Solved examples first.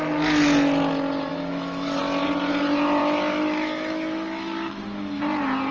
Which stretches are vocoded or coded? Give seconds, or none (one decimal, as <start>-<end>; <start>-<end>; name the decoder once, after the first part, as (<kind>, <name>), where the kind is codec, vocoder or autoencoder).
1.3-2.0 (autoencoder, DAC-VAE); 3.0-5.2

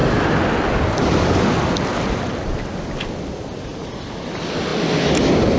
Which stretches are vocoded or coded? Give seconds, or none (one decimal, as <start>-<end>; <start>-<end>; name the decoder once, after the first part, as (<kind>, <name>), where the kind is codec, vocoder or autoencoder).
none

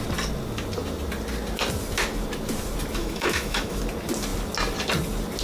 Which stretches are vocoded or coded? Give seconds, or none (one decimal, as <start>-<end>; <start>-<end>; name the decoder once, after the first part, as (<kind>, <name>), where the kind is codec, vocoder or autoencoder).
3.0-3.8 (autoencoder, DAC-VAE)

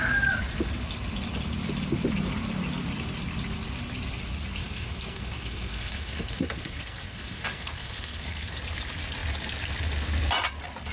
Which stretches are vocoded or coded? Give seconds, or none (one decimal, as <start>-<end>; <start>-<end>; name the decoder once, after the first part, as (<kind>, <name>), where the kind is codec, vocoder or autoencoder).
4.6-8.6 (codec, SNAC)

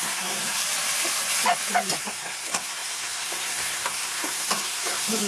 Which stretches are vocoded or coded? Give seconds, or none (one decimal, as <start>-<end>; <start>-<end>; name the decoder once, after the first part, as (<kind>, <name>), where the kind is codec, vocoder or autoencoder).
0.0-0.6 (codec, SNAC); 2.0-5.3

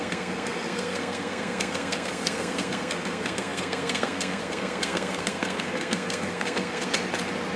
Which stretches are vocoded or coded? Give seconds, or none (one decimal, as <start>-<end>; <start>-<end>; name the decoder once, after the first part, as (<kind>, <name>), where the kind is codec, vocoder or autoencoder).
0.0-6.9 (codec, SNAC)